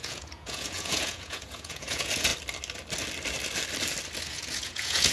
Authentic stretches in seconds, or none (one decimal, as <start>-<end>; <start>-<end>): 2.3-4.3